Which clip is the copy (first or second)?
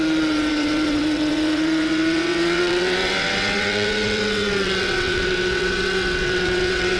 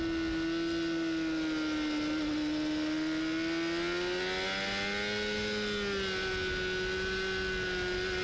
first